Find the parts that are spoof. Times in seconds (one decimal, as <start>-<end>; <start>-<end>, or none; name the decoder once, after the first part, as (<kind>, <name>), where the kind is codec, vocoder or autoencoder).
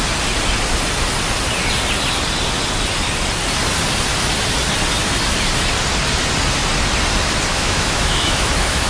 7.5-8.9 (autoencoder, DAC-VAE)